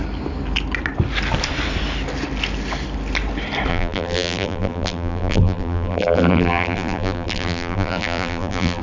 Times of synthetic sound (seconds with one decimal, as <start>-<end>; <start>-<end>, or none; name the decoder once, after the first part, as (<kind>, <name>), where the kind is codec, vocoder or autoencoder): 3.7-8.8 (vocoder, BigVGAN v2)